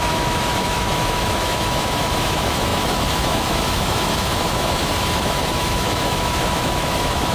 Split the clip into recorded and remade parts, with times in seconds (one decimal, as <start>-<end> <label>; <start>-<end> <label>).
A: 0.0-7.3 remade